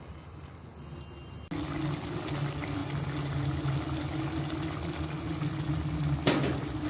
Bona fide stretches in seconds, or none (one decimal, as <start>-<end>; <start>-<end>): 0.0-6.9